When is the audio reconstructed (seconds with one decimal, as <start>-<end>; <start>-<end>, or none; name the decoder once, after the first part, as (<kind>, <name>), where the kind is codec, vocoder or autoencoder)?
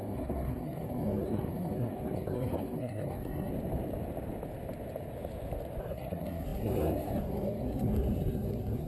0.0-3.5 (codec, SNAC); 5.8-8.9